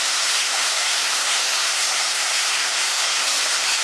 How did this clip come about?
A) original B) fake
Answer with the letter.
B